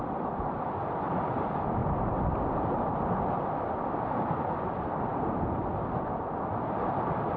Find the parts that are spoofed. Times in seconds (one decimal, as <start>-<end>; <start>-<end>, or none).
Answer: 1.8-2.8; 5.1-5.7